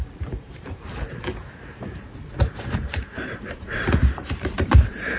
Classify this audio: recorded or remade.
remade